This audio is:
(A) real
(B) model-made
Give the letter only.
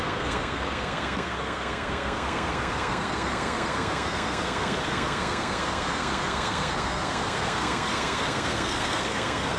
B